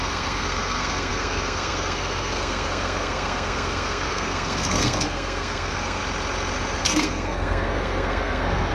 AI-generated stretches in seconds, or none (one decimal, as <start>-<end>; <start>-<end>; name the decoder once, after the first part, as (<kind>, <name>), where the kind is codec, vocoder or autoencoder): 0.0-6.0 (codec, SNAC); 6.8-8.7